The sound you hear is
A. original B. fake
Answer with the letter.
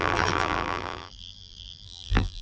B